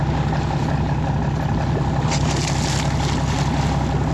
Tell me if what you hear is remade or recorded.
recorded